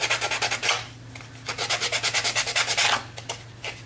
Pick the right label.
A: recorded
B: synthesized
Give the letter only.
A